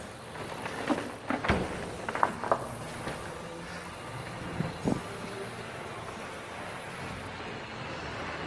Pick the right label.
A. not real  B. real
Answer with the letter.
B